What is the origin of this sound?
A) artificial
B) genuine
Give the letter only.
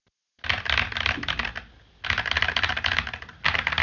B